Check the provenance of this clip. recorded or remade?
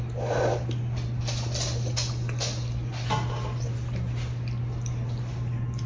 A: recorded